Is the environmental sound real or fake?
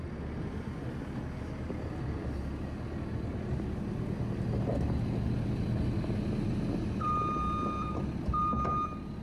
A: real